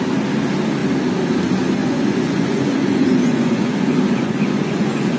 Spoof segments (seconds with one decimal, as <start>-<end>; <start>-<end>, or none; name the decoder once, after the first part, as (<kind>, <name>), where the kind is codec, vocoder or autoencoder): 1.8-5.2 (vocoder, Vocos)